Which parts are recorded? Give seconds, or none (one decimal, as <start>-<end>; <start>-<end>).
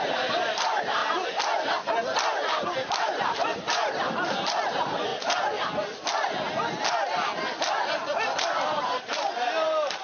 1.0-2.6; 5.1-8.8